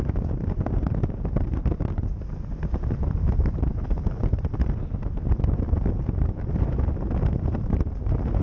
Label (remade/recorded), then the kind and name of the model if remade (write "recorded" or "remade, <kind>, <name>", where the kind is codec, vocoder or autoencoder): remade, vocoder, BigVGAN v2